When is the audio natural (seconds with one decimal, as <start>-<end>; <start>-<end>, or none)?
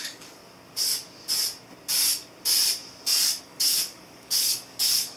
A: 0.4-3.4